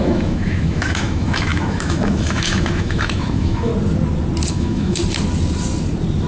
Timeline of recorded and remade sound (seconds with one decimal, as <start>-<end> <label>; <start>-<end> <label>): 0.0-3.7 remade; 3.7-4.5 recorded; 4.5-5.0 remade; 5.0-6.3 recorded